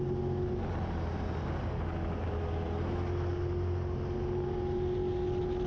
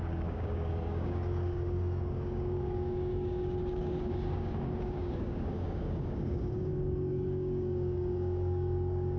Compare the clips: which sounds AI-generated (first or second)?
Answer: second